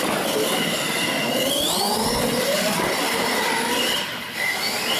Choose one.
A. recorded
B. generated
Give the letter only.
A